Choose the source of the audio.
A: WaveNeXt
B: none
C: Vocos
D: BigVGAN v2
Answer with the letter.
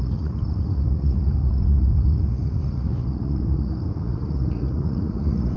C